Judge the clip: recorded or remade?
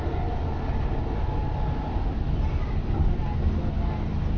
recorded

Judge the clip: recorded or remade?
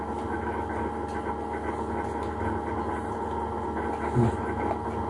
recorded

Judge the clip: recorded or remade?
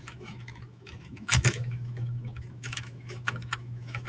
remade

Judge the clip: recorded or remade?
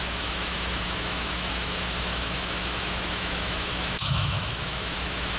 remade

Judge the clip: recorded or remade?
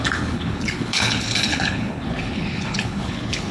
remade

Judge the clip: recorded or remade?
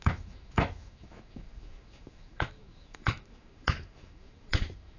remade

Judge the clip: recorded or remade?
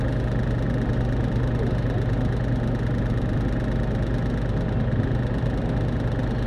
recorded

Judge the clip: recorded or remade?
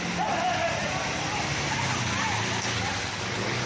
recorded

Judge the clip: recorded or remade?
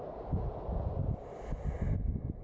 recorded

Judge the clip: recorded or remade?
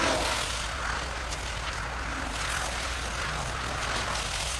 recorded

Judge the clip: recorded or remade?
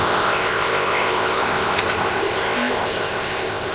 remade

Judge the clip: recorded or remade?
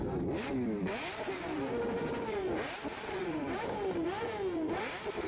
remade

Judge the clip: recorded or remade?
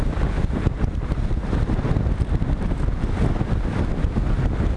remade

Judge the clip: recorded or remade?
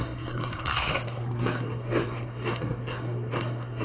remade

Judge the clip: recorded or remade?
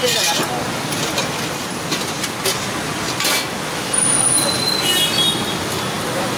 recorded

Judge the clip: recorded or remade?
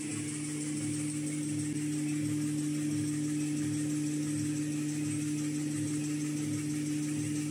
recorded